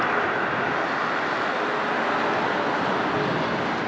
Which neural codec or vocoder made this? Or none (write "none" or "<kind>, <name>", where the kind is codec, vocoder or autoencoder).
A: none